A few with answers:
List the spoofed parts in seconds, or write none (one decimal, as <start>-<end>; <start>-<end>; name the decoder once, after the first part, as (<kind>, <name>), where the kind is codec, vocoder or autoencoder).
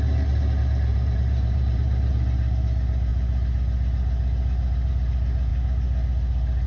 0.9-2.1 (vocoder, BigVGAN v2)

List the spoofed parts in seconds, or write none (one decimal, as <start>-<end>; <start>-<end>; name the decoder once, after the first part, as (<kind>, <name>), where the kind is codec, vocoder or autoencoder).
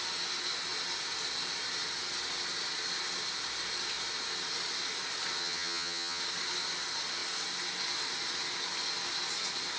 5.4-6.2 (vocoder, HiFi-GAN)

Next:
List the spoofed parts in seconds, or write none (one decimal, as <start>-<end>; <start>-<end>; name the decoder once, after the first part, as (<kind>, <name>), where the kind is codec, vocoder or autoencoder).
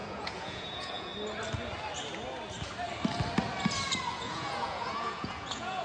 0.0-1.1 (vocoder, Vocos); 4.1-5.8